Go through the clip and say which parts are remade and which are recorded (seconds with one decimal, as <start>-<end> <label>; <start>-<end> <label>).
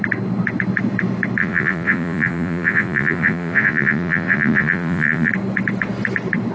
0.0-1.4 recorded; 1.4-5.3 remade; 5.3-6.5 recorded